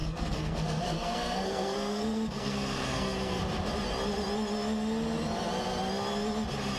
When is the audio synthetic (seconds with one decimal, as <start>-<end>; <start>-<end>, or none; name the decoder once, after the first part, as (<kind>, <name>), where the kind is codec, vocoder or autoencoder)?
0.0-3.4 (codec, SNAC)